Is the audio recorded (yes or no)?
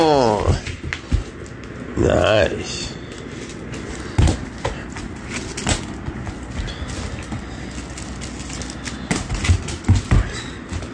yes